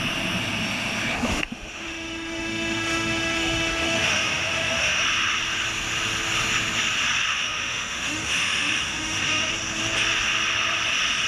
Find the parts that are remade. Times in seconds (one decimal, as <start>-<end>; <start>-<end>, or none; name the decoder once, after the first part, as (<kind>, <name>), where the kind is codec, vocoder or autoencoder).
1.3-5.0 (autoencoder, DAC-VAE); 7.3-9.5